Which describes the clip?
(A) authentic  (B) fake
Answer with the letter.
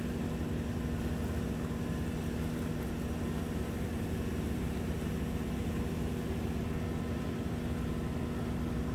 A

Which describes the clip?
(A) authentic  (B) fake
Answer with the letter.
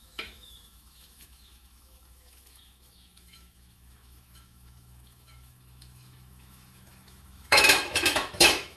B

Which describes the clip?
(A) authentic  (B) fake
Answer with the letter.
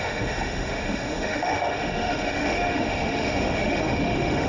B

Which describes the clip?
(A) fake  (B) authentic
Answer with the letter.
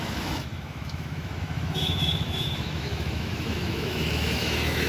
A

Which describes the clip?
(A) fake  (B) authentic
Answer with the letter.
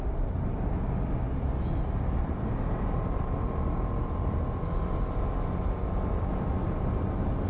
B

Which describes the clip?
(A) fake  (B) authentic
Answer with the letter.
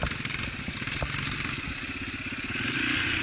B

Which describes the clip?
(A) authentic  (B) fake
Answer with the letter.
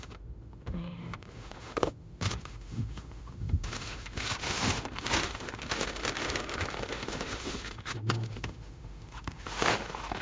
B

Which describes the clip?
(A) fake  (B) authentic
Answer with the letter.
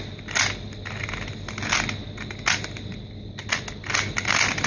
B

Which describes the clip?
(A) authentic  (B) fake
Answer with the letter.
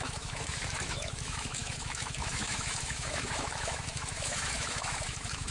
B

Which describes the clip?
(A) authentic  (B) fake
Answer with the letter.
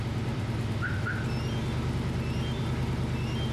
A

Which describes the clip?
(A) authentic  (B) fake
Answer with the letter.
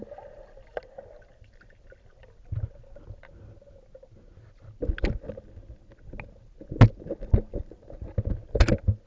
A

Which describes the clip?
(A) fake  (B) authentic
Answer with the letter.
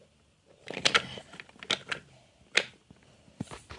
B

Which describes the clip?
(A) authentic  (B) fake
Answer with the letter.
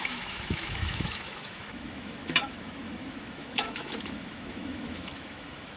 B